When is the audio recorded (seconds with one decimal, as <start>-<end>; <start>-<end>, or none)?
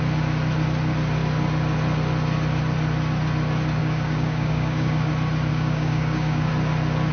0.0-3.8; 5.1-5.5; 6.5-7.1